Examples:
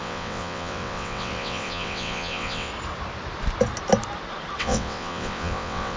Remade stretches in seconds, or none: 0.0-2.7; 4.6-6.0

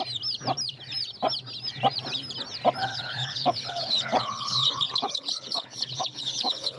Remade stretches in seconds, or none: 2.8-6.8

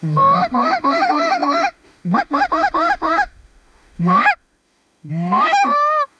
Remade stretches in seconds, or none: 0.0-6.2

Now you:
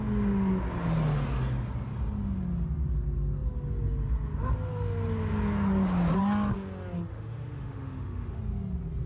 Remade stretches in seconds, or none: 7.1-8.4